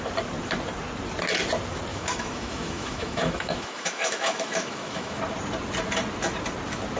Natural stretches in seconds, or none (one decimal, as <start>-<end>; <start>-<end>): 0.0-1.9; 5.2-7.0